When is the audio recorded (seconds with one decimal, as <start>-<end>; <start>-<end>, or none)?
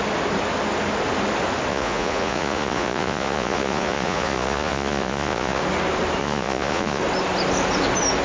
0.0-1.7; 5.6-6.2; 7.0-8.2